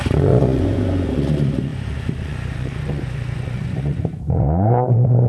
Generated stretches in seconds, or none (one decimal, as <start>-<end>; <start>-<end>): 0.0-5.3

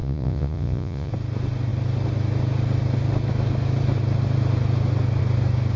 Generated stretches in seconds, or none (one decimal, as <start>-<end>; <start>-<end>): 0.0-1.1

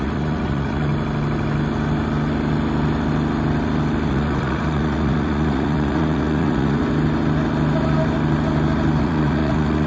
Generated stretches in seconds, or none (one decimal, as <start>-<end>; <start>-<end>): 0.0-0.9; 4.1-6.8; 9.0-9.9